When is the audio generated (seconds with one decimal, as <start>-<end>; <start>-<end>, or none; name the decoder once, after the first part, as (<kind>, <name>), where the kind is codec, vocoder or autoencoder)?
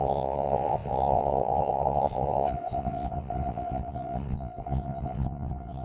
0.0-5.8 (vocoder, WaveNeXt)